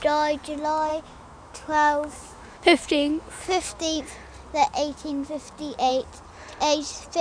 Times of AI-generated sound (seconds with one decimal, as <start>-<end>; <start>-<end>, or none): 0.9-4.0; 4.7-5.9